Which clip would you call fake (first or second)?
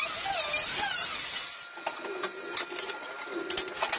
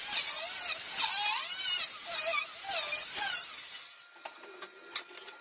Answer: second